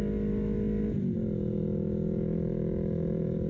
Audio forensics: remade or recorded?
recorded